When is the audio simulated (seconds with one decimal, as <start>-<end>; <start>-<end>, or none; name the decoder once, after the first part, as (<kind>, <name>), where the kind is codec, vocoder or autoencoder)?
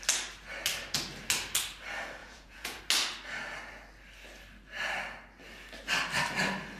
2.2-2.8 (vocoder, Vocos)